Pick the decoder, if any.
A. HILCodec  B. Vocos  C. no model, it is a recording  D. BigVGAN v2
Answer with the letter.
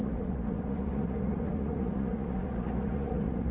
B